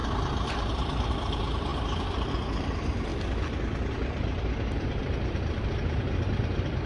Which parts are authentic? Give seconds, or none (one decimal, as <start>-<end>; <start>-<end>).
3.1-3.9